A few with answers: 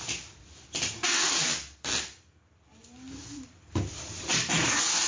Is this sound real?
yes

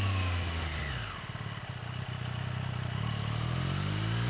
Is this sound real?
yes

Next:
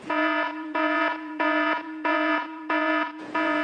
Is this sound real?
no